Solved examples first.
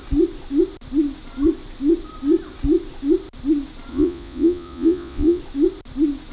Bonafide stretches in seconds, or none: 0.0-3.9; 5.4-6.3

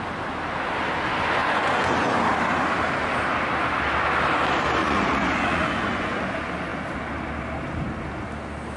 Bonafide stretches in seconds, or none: 0.0-1.4; 2.2-4.8; 6.2-8.8